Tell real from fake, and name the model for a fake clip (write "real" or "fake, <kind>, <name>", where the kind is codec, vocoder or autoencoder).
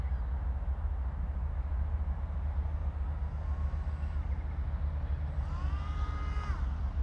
real